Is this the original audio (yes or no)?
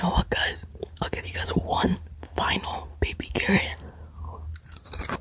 no